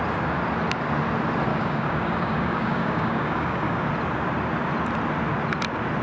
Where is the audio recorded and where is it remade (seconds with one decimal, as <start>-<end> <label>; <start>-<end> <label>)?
0.0-1.5 recorded; 1.5-3.9 remade; 3.9-6.0 recorded